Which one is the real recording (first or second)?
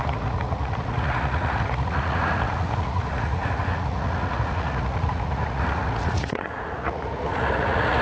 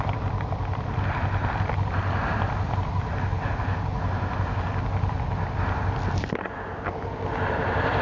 second